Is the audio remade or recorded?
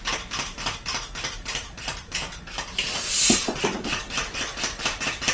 remade